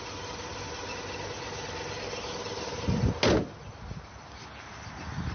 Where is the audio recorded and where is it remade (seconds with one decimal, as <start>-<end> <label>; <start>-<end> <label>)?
0.0-5.3 recorded